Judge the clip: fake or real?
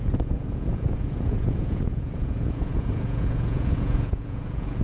fake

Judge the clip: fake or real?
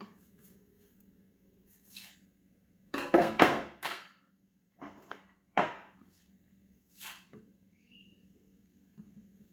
fake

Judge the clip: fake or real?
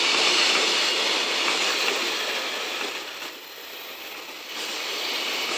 real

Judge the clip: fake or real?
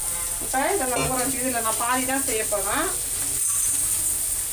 real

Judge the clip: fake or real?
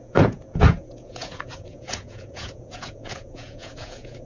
fake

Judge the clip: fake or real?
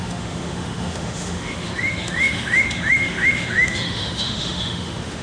fake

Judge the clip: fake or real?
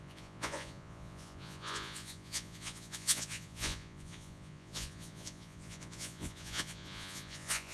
fake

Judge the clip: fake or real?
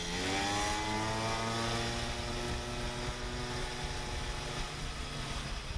real